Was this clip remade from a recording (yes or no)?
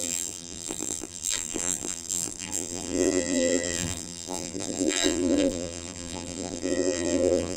yes